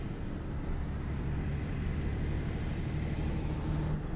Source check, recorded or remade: remade